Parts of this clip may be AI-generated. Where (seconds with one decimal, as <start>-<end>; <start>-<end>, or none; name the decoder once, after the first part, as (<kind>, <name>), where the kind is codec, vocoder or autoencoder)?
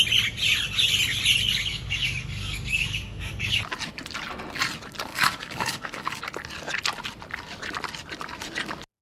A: 1.7-3.6 (codec, DAC); 5.1-6.2